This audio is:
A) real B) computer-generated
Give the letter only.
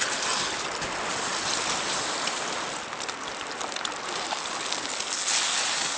A